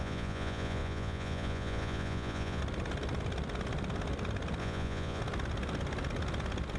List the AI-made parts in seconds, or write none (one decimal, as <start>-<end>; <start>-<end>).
0.0-2.6; 4.6-5.2